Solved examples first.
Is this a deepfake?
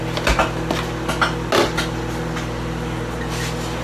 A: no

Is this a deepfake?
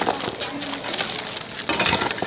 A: no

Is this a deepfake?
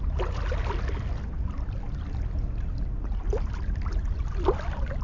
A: no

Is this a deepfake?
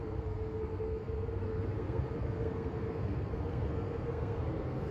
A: yes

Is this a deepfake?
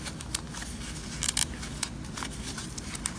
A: no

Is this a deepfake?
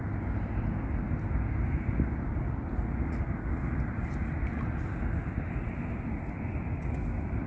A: no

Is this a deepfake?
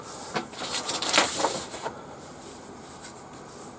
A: no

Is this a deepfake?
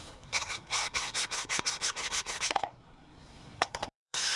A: yes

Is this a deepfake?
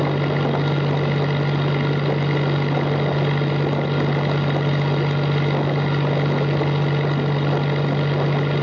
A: no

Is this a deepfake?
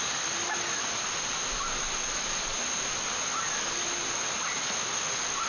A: no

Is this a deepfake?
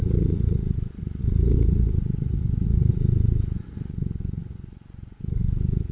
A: yes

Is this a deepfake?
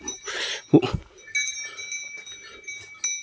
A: no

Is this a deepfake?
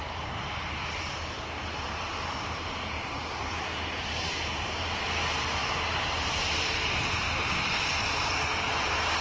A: yes